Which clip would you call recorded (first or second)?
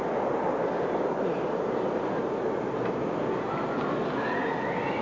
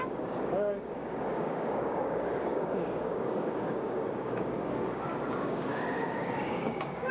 first